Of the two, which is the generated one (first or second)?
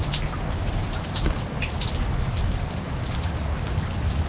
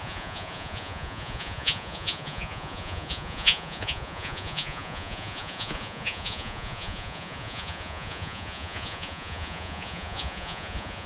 second